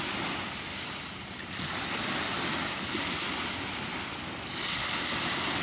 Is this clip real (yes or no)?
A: yes